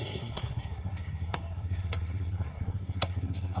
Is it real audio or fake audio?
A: fake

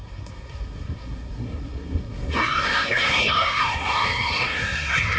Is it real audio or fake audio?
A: fake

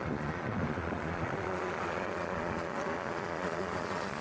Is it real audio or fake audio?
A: fake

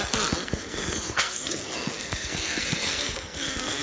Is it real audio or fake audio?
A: fake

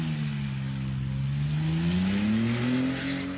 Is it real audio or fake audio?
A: real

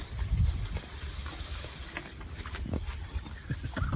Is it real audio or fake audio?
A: real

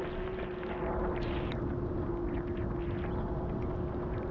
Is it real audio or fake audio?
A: real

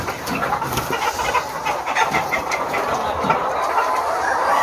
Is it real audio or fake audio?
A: fake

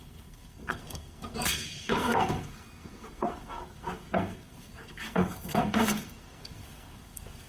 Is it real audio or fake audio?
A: fake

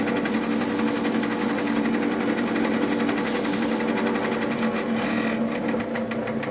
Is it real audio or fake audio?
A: real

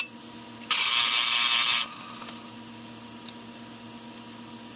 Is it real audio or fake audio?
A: real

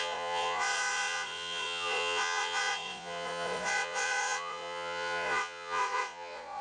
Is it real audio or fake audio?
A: fake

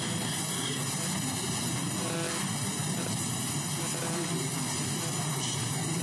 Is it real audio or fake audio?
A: real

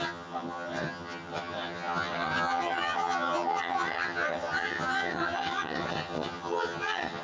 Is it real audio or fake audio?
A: fake